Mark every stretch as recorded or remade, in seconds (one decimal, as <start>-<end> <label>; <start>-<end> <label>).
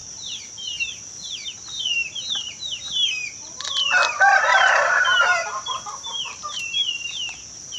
0.0-5.4 recorded; 5.4-6.9 remade; 6.9-7.8 recorded